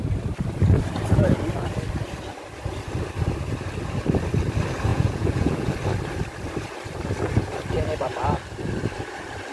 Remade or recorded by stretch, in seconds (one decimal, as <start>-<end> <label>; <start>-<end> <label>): 0.0-4.9 recorded; 4.9-5.7 remade; 5.7-9.5 recorded

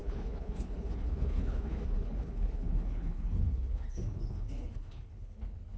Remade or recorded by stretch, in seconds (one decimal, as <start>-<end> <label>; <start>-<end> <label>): 0.0-5.8 remade

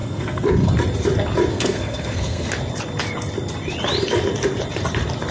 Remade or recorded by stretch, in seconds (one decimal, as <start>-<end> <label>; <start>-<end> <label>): 0.0-0.7 remade; 0.7-1.5 recorded; 1.5-2.5 remade; 2.5-5.3 recorded

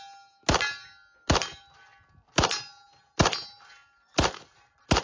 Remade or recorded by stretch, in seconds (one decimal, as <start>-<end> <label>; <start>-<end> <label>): 0.0-5.0 recorded

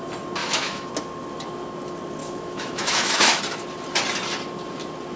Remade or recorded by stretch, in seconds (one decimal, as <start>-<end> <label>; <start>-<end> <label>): 0.0-0.4 recorded; 0.4-0.9 remade; 0.9-2.2 recorded; 2.2-3.4 remade; 3.4-5.2 recorded